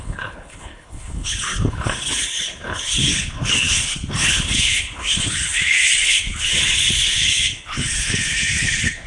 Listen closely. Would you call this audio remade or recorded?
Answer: remade